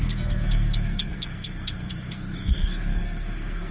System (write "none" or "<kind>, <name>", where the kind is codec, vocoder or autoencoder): codec, SNAC